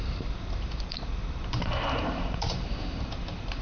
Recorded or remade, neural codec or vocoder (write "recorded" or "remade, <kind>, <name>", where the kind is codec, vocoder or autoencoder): remade, vocoder, BigVGAN v2